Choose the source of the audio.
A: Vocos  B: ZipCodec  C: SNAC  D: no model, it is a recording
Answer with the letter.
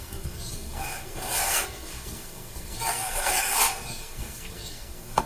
C